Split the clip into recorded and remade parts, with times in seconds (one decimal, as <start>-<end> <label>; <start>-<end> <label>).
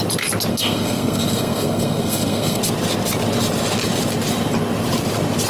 0.0-0.5 recorded; 0.5-2.6 remade; 2.6-5.5 recorded